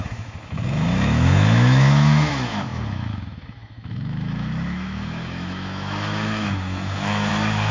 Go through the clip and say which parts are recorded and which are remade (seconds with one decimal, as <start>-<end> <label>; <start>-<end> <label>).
0.0-7.7 remade